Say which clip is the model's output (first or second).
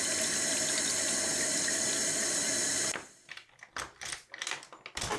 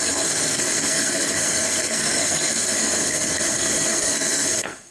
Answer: second